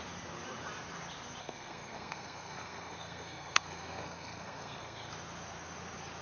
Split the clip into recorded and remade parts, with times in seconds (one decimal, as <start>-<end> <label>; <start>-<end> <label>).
0.0-1.4 recorded; 1.4-5.1 remade; 5.1-6.2 recorded